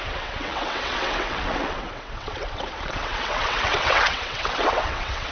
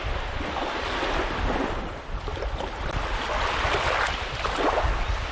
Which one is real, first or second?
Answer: second